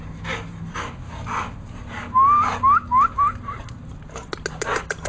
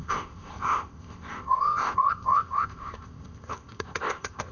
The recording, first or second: first